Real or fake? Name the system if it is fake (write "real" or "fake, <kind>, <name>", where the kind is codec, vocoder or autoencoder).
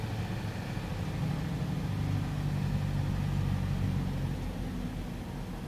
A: real